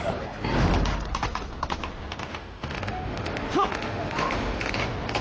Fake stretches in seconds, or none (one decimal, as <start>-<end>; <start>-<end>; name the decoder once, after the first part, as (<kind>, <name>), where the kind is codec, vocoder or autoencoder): 2.3-4.7 (autoencoder, DAC-VAE)